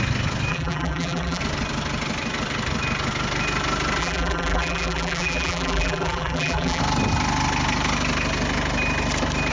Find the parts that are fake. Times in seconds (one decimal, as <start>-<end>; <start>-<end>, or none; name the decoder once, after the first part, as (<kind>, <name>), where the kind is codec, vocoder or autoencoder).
0.5-1.4 (vocoder, BigVGAN v2); 4.0-6.8